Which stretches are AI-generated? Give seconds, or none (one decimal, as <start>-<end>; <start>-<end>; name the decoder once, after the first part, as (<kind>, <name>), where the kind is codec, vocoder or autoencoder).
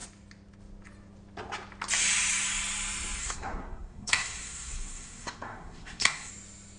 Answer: 3.2-6.3 (codec, SNAC)